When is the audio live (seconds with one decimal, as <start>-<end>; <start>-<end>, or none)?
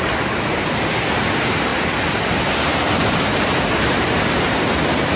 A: 0.0-5.2